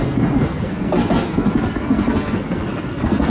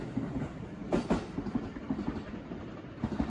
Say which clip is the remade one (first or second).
first